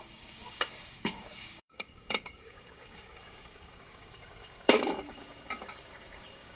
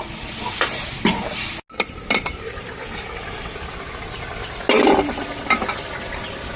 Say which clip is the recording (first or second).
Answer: second